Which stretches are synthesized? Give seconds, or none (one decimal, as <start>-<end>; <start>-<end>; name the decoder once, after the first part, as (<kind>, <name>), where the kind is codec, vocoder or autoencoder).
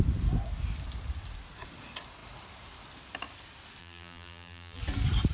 3.8-4.8 (vocoder, BigVGAN v2)